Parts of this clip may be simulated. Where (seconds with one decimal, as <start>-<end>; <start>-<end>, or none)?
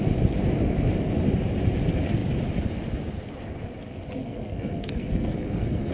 4.2-5.9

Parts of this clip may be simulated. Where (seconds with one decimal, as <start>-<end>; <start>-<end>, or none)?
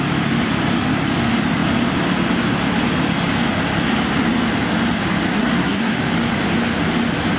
5.3-6.0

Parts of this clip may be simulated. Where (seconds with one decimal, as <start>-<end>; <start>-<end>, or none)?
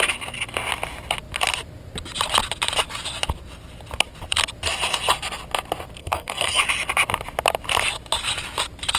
6.0-6.6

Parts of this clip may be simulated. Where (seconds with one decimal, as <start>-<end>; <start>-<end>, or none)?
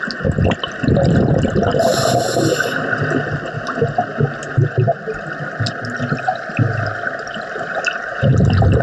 none